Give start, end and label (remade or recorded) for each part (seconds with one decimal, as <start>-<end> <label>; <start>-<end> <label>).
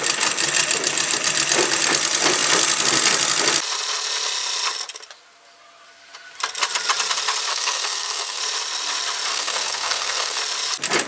0.0-7.5 recorded; 7.5-8.4 remade; 8.4-9.3 recorded; 9.3-10.4 remade; 10.4-11.1 recorded